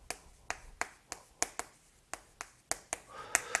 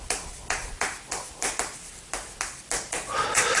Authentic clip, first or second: first